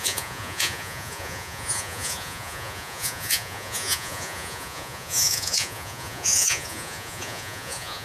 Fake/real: fake